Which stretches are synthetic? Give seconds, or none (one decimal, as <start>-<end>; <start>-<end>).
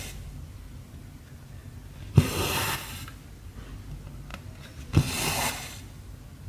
none